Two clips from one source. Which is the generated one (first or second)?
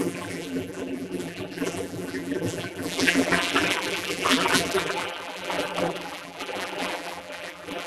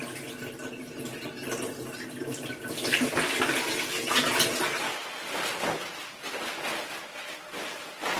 first